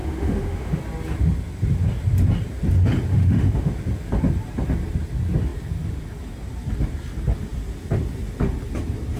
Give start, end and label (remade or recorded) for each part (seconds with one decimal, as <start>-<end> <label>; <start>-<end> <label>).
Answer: 0.0-0.8 remade; 0.8-3.1 recorded; 3.1-3.7 remade; 3.7-9.2 recorded